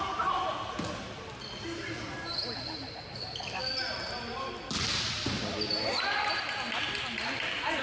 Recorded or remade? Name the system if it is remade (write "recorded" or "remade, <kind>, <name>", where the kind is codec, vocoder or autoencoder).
recorded